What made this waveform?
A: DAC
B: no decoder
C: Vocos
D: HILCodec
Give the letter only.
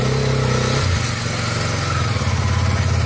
B